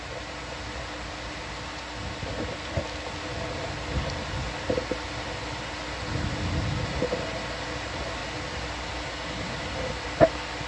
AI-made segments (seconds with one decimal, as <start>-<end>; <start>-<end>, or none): none

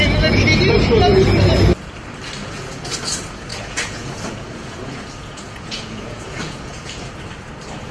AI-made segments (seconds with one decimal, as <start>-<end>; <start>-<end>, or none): 2.4-3.0; 3.5-7.1

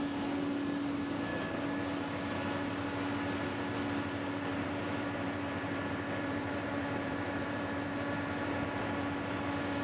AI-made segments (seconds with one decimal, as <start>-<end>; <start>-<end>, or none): 4.5-8.5

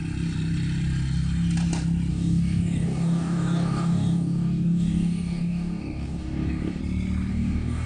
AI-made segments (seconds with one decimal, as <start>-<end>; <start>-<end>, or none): 2.1-6.8; 7.3-7.9

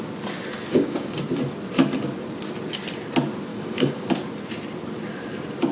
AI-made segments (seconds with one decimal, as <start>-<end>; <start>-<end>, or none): 0.7-1.2; 3.5-4.1

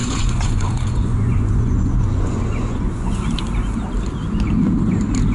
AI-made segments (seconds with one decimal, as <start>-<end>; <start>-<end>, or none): 0.0-3.2

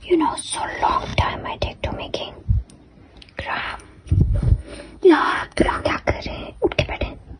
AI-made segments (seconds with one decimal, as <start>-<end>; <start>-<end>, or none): 3.6-5.9